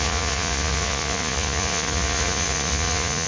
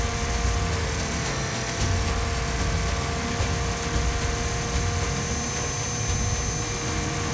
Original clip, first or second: second